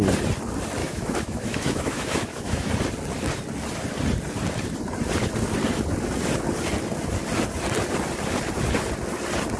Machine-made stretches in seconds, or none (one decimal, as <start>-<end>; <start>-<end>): 0.8-2.7

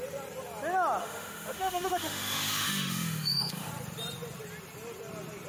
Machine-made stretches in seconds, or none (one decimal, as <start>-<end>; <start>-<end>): 1.0-3.7